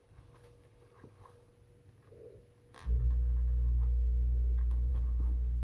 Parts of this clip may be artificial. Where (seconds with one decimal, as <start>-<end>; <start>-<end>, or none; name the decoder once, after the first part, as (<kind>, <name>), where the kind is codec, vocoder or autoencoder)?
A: 0.0-1.5 (codec, HILCodec); 4.9-5.6